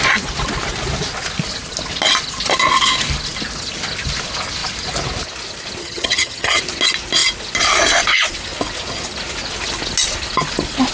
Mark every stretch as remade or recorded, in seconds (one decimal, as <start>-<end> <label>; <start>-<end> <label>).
0.0-5.8 recorded; 5.8-6.6 remade; 6.6-10.9 recorded

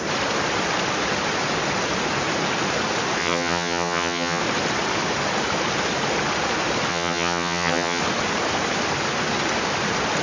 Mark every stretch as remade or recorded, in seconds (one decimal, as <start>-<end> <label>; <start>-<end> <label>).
0.0-3.2 recorded; 3.2-4.4 remade; 4.4-6.9 recorded; 6.9-8.0 remade; 8.0-10.2 recorded